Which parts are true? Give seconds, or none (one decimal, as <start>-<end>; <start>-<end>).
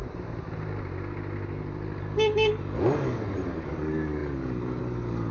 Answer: 0.0-2.0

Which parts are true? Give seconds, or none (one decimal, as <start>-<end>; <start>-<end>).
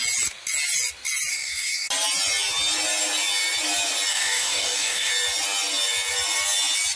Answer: 0.0-1.3; 1.9-4.1; 5.1-7.0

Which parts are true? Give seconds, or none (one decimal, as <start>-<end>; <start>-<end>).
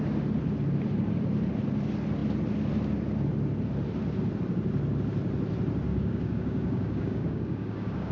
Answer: 0.0-5.9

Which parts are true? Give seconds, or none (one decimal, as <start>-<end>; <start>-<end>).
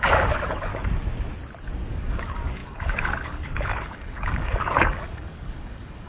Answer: 0.7-1.9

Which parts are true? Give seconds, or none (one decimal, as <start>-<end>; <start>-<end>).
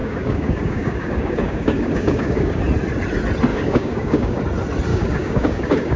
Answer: 2.6-3.5; 4.4-4.9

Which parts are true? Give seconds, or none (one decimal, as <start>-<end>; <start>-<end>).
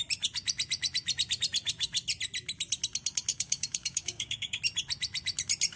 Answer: 0.0-3.3; 4.6-5.8